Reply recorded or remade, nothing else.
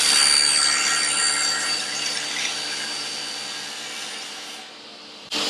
recorded